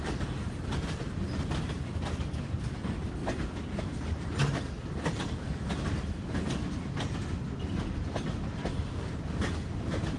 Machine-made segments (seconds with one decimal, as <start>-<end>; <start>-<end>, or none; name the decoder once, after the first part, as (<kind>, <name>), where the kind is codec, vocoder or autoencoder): none